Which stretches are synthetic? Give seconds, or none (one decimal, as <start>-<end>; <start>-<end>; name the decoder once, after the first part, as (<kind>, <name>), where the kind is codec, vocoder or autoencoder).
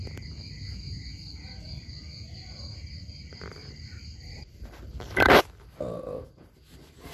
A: 3.6-5.4 (vocoder, BigVGAN v2)